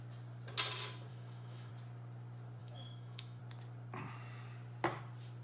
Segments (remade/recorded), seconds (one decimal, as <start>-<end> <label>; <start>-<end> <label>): 0.0-1.1 recorded; 1.1-1.7 remade; 1.7-2.6 recorded; 2.6-3.4 remade; 3.4-5.4 recorded